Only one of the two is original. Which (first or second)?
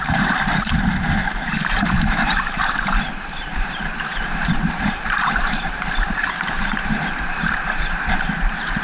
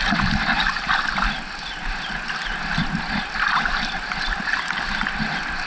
second